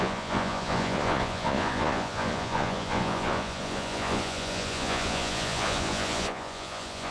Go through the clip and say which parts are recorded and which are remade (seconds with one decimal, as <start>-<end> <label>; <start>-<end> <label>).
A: 0.0-7.1 remade